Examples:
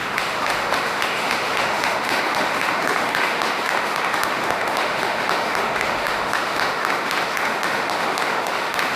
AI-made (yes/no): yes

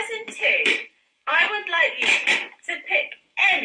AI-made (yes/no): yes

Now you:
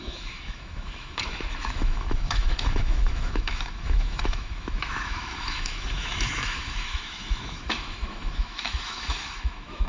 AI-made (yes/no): yes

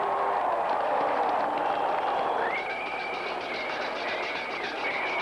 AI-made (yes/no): no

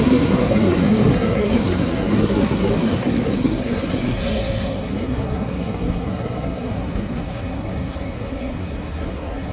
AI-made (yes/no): yes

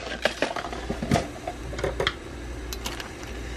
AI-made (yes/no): no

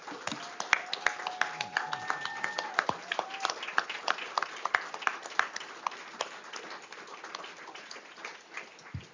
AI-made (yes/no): no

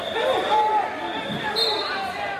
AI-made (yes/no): no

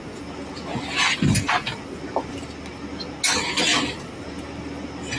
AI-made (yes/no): no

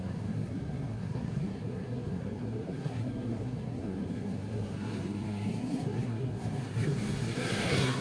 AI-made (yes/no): yes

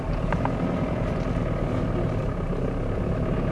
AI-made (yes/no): no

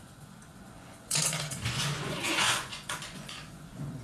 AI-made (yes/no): yes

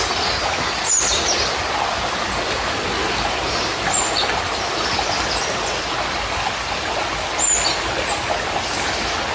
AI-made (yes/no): no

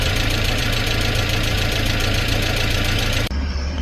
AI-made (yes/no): yes